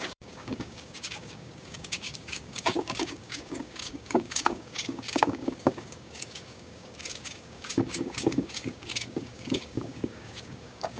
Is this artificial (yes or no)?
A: yes